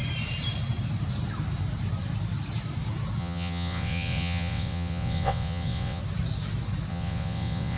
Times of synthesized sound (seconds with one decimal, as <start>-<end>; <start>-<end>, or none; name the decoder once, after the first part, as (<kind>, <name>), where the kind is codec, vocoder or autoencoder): 3.2-6.0 (vocoder, WaveNeXt); 6.9-7.8